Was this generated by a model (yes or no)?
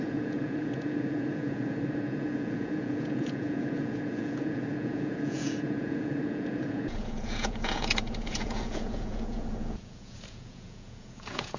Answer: yes